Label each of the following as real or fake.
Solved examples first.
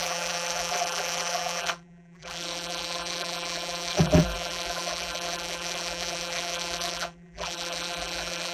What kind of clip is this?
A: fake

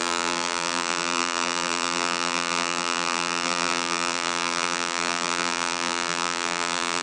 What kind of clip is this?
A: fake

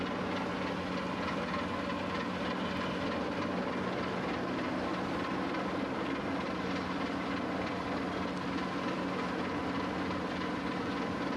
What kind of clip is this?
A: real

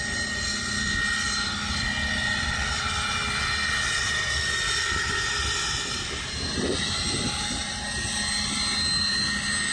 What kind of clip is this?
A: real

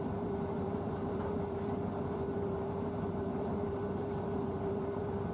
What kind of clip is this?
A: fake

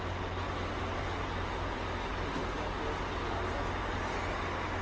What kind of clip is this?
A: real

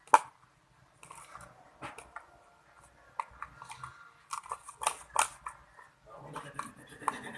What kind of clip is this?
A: real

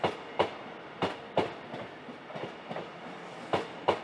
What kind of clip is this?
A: real